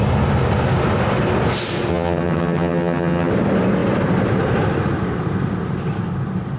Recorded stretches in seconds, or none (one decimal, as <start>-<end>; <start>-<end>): 0.0-1.9; 3.3-6.6

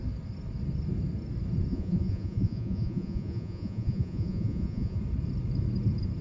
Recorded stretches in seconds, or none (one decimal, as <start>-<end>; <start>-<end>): 0.0-1.7; 5.0-6.2

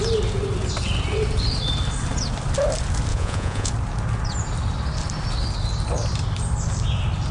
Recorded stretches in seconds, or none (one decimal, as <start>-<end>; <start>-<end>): 0.0-3.1; 3.7-7.3

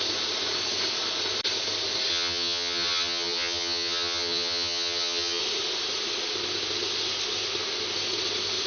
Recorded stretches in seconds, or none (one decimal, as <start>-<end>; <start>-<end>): 0.0-2.1; 5.4-8.7

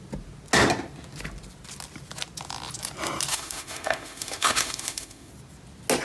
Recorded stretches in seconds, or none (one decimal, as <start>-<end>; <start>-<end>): 0.0-3.3; 5.3-6.0